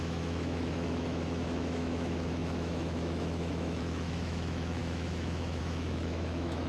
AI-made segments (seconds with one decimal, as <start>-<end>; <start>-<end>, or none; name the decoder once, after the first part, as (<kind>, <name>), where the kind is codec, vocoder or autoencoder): 0.0-6.7 (autoencoder, DAC-VAE)